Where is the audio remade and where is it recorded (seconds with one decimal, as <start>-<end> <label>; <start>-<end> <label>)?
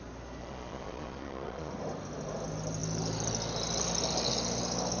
0.0-0.4 recorded; 0.4-1.7 remade; 1.7-5.0 recorded